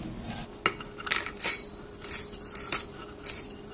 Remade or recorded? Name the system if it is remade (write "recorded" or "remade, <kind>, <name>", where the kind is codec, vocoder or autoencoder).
recorded